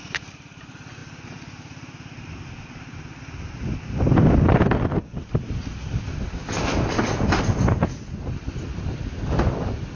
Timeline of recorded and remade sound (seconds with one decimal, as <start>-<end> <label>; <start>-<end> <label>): 0.0-10.0 recorded